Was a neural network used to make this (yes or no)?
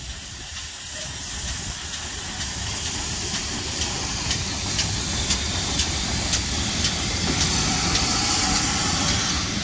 no